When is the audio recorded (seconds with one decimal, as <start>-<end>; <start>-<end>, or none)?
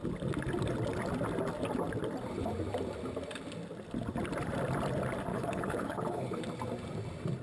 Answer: 0.0-5.3; 6.4-7.4